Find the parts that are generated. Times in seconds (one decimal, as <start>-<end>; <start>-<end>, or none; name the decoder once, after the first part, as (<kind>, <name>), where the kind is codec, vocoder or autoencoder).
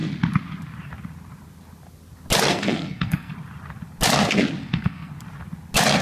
2.5-3.3 (codec, SNAC); 4.6-5.1